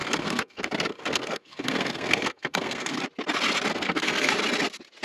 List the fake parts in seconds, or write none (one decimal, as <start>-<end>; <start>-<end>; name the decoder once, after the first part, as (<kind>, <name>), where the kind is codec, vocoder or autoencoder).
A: 0.0-3.0 (codec, SNAC); 3.7-4.3